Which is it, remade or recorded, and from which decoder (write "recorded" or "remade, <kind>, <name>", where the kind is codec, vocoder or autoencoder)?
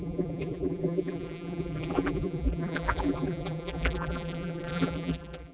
remade, vocoder, BigVGAN v2